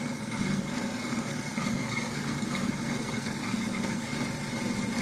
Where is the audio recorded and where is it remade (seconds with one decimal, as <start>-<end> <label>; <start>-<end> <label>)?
0.0-4.1 remade; 4.1-5.0 recorded